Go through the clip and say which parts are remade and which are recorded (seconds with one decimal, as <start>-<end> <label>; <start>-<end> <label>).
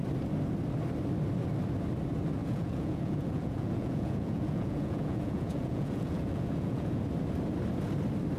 0.0-2.4 recorded; 2.4-7.0 remade; 7.0-8.4 recorded